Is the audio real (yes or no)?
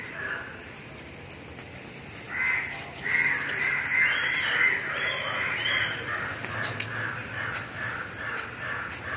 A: yes